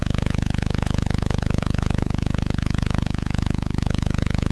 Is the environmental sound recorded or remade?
remade